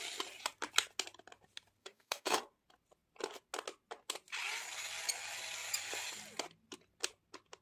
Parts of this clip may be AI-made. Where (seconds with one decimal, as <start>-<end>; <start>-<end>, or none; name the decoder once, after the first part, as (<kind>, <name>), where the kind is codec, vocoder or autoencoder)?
1.8-2.4 (codec, DAC)